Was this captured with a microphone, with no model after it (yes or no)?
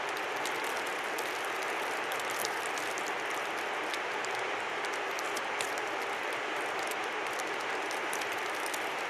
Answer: yes